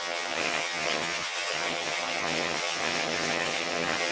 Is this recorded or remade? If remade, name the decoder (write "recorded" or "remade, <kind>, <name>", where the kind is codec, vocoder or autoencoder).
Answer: remade, vocoder, HiFi-GAN